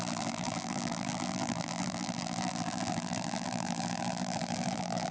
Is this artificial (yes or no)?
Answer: yes